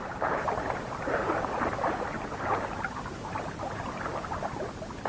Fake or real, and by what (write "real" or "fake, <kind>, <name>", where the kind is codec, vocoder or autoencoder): real